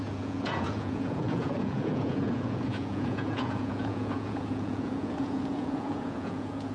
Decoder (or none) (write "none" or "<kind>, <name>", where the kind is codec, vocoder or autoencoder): vocoder, Vocos